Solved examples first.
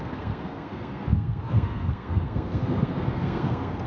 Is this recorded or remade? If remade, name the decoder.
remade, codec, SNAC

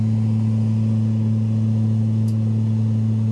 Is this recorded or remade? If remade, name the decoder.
recorded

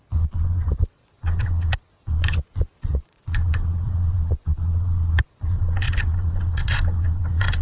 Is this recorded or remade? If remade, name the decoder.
remade, vocoder, Vocos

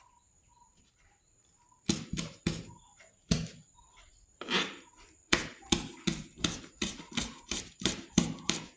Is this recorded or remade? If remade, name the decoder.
remade, vocoder, BigVGAN v2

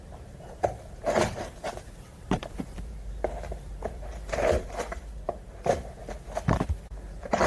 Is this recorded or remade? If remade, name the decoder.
remade, vocoder, BigVGAN v2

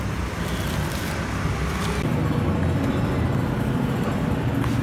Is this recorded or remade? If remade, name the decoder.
recorded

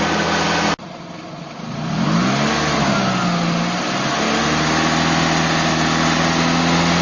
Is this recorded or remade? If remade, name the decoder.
recorded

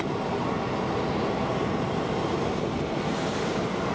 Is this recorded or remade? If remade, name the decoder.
recorded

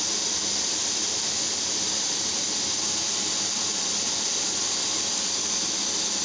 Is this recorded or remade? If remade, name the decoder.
remade, vocoder, BigVGAN v2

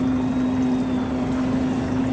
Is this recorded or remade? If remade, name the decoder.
recorded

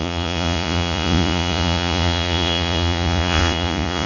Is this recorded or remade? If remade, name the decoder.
remade, vocoder, Vocos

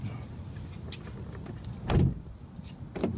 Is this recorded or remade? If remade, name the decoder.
recorded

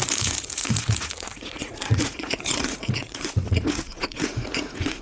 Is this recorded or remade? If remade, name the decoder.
remade, vocoder, Vocos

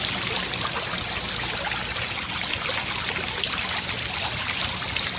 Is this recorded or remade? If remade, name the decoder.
recorded